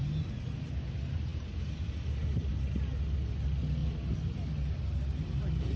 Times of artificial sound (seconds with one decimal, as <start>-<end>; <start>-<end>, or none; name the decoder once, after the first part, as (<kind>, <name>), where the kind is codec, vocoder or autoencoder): none